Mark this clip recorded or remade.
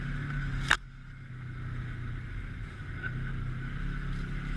recorded